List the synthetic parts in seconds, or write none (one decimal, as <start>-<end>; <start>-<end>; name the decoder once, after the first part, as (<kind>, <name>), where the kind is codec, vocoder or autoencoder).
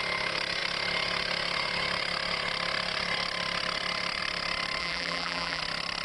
4.8-5.6 (vocoder, BigVGAN v2)